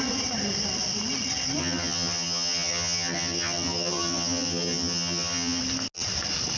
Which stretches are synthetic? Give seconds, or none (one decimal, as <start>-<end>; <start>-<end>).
1.6-5.6